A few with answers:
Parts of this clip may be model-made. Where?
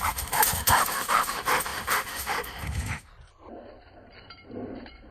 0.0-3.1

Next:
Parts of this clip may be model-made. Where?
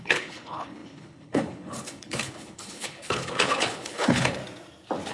0.0-4.4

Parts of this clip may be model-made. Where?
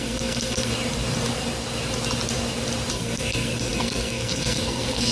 0.0-0.7; 2.9-5.1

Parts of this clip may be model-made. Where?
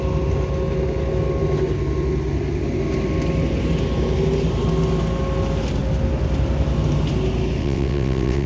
7.6-8.5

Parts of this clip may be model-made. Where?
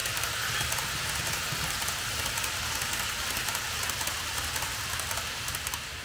none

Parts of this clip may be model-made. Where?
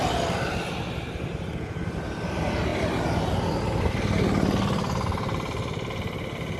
none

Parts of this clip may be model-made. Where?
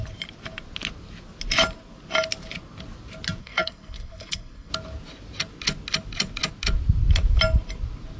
3.4-4.7